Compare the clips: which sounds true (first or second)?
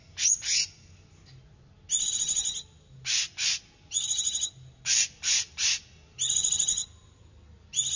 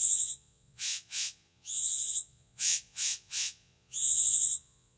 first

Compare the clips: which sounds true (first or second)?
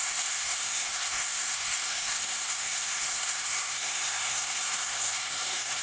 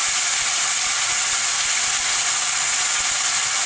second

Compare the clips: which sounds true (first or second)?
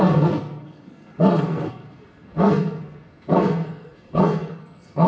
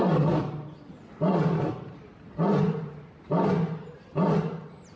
second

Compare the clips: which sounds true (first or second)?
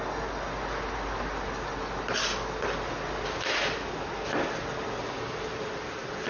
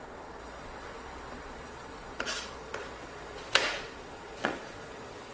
first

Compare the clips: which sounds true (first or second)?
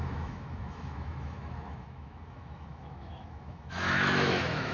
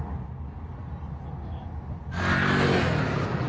second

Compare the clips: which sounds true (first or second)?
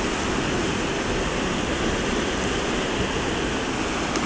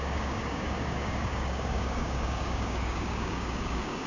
first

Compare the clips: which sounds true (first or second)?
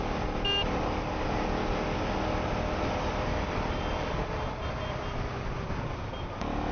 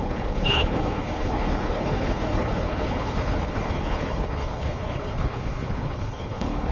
first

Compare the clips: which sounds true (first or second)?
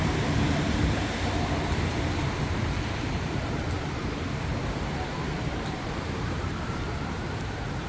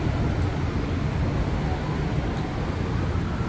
second